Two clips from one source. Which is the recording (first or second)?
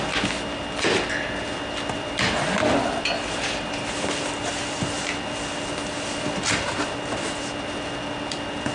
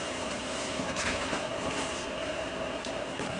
first